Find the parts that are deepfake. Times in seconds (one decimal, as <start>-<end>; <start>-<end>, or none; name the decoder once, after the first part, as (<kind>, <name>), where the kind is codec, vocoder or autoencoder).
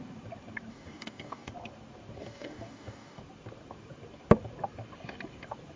0.7-1.5 (codec, DAC); 2.2-3.2